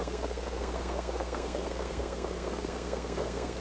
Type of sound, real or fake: fake